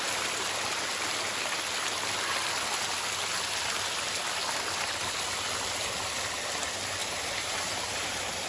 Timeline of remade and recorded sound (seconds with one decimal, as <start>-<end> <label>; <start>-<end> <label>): 0.0-7.0 recorded; 7.0-8.5 remade

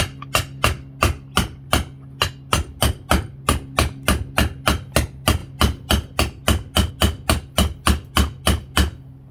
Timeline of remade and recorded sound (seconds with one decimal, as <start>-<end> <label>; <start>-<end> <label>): 0.0-9.3 recorded

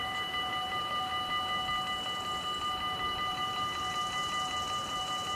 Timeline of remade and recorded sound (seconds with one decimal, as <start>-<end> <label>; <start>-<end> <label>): 0.0-1.1 remade; 1.1-2.6 recorded; 2.6-5.4 remade

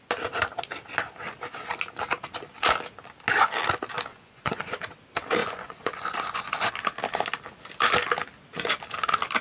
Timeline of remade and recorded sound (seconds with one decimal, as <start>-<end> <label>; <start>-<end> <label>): 0.0-4.1 recorded; 4.1-4.7 remade; 4.7-5.4 recorded; 5.4-6.7 remade; 6.7-9.4 recorded

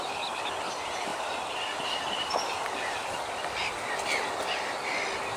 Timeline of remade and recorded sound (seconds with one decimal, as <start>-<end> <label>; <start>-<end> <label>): 0.0-1.1 remade; 1.1-2.0 recorded; 2.0-3.0 remade; 3.0-4.5 recorded; 4.5-5.4 remade

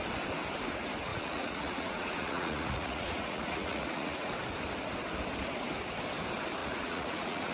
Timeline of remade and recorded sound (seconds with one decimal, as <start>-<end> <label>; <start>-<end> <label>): 0.0-1.1 recorded; 1.1-4.3 remade; 4.3-6.6 recorded; 6.6-7.5 remade